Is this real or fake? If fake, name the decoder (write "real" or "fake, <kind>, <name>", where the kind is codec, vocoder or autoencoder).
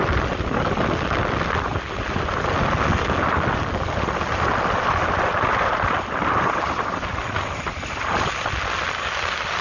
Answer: real